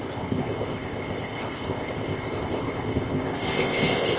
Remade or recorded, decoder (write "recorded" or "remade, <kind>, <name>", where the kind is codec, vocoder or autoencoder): remade, codec, ZipCodec